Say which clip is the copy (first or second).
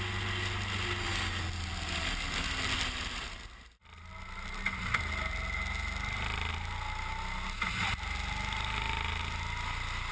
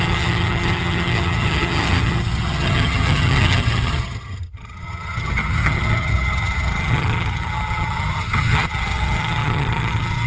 second